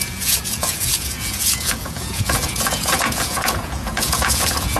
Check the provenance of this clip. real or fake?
fake